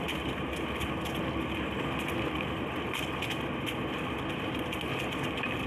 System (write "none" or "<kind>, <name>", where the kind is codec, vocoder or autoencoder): none